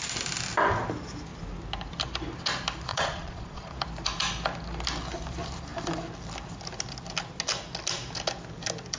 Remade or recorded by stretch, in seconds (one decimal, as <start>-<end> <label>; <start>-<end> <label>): 0.0-2.9 recorded; 2.9-3.7 remade; 3.7-9.0 recorded

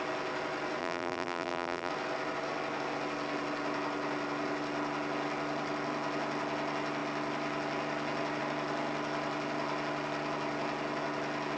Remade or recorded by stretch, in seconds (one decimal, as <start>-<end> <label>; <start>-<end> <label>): 0.0-0.8 recorded; 0.8-1.9 remade; 1.9-11.6 recorded

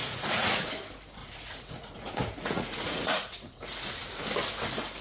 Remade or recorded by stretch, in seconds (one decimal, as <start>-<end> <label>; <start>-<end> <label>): 0.0-0.7 remade; 0.7-1.2 recorded; 1.2-4.2 remade; 4.2-5.0 recorded

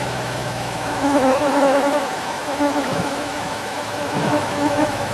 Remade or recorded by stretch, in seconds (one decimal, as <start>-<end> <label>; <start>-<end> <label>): 0.0-5.1 remade

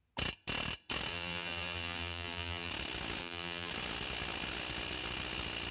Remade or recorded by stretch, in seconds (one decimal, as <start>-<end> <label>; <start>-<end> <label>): 0.0-1.1 recorded; 1.1-2.7 remade; 2.7-3.2 recorded; 3.2-3.7 remade; 3.7-5.7 recorded